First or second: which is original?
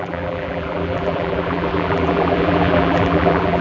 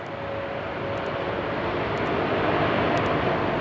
second